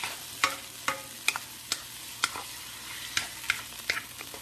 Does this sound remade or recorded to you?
recorded